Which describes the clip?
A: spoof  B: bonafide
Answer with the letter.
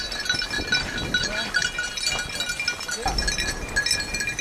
B